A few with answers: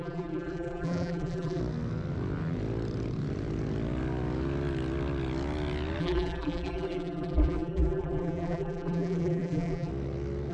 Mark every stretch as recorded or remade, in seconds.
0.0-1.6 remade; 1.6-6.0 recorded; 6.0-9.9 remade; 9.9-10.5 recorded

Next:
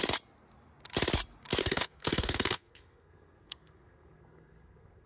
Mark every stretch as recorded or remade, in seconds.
0.0-1.6 recorded; 1.6-5.1 remade